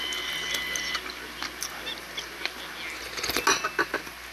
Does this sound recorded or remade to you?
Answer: recorded